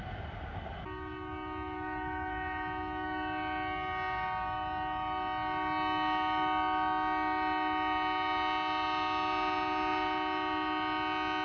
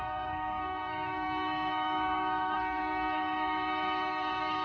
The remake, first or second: second